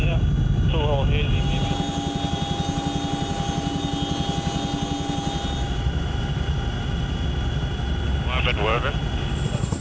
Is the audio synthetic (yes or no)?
no